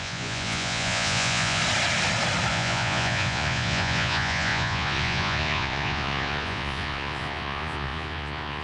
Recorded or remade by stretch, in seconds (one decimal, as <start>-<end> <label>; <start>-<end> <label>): 0.0-1.6 remade; 1.6-2.5 recorded; 2.5-8.6 remade